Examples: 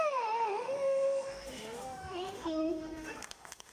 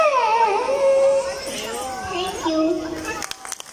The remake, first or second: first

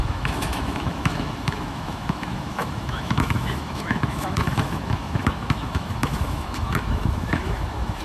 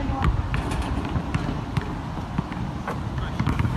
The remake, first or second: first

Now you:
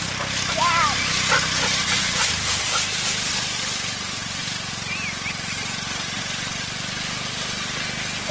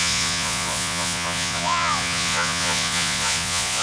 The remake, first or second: second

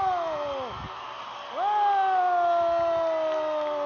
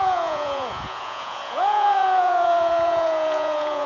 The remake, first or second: second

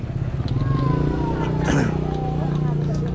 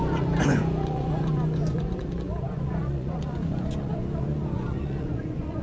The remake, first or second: second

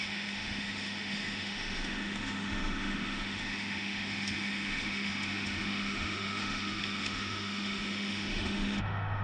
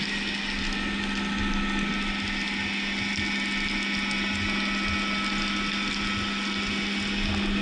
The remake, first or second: first